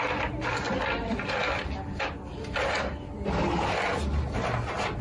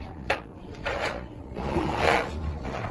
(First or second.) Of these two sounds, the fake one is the second